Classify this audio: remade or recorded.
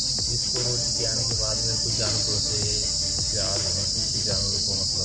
recorded